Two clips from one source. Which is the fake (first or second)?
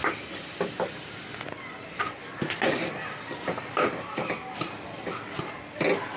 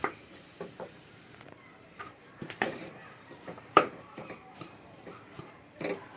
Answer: second